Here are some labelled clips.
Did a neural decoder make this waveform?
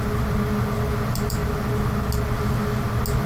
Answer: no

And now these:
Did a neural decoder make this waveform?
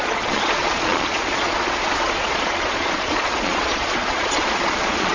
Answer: yes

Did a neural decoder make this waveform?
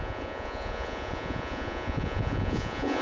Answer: yes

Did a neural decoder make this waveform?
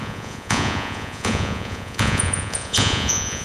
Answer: yes